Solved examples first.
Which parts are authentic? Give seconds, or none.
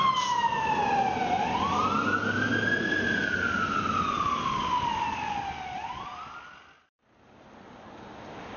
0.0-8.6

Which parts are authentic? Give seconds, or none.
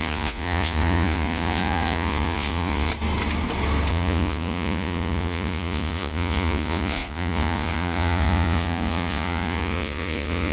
2.9-3.9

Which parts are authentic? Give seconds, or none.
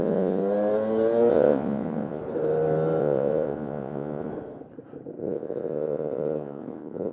0.4-1.3; 2.2-3.0; 4.3-5.2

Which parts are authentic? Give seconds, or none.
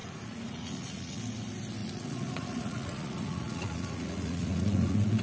1.2-1.8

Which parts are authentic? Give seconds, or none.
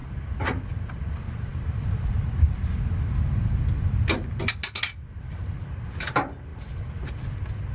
0.0-7.7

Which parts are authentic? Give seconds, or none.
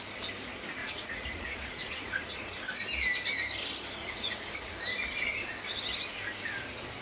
0.0-0.8; 2.6-4.0; 4.8-7.0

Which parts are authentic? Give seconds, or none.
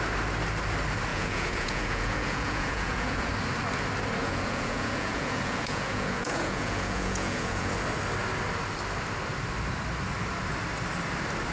0.0-1.1; 3.3-4.2; 7.7-11.5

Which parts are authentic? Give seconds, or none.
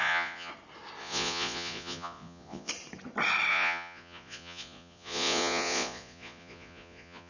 0.5-1.0; 2.7-3.5